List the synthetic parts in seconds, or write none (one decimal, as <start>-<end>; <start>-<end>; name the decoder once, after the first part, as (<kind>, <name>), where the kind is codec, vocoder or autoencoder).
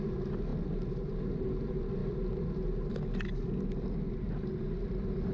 none